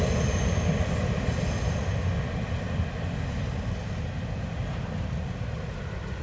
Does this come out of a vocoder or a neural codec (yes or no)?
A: no